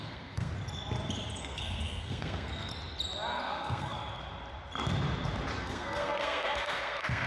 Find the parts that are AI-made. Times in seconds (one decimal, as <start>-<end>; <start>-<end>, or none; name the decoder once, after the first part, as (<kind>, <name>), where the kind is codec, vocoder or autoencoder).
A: 0.0-0.5 (codec, SNAC); 1.4-2.7; 3.4-4.0; 5.6-7.3